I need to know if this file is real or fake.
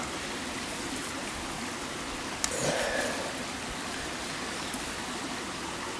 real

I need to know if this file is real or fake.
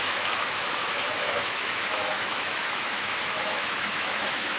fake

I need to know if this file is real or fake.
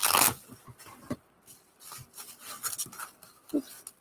real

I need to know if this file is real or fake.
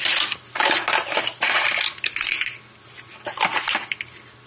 real